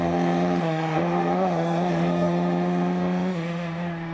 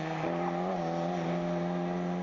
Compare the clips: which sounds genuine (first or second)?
second